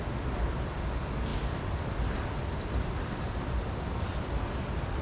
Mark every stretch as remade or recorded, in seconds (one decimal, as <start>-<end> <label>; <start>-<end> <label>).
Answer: 0.0-5.0 recorded